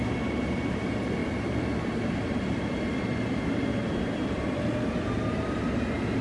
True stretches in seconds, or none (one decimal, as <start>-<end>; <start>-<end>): 0.0-1.2; 4.9-6.2